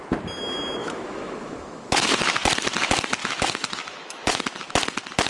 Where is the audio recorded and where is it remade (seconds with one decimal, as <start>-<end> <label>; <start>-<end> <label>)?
0.0-0.8 recorded; 0.8-2.2 remade; 2.2-3.2 recorded; 3.2-4.4 remade; 4.4-5.3 recorded